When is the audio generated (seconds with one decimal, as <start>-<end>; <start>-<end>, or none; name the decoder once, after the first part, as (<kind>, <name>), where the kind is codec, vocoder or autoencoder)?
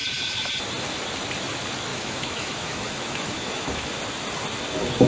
1.9-3.9 (autoencoder, DAC-VAE)